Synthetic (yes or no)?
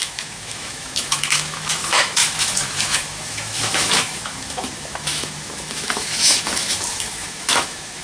yes